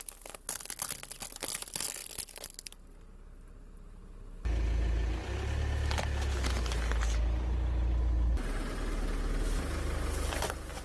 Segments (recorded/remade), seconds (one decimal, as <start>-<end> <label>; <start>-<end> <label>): 0.0-10.8 recorded